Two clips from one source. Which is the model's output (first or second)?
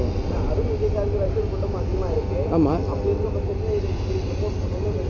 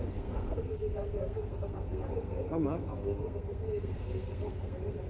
second